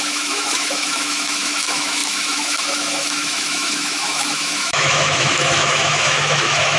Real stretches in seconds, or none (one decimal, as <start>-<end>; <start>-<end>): none